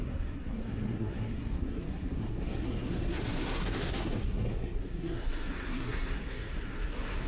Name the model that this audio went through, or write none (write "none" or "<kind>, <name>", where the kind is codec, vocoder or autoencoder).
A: codec, SNAC